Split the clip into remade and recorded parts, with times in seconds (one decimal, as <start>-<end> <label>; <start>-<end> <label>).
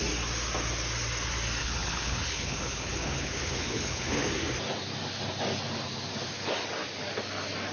0.0-1.6 recorded; 1.6-4.3 remade; 4.3-7.7 recorded